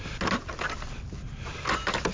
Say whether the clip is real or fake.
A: real